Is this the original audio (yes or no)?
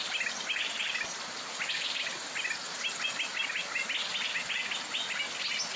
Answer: yes